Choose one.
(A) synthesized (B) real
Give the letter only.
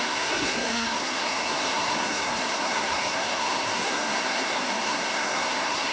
A